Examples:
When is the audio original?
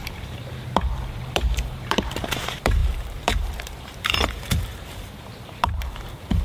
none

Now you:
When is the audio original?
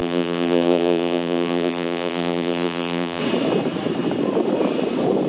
3.2-5.3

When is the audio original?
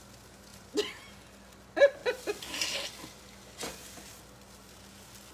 0.0-0.5; 1.2-5.3